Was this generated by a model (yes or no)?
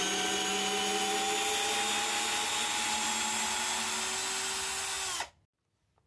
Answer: no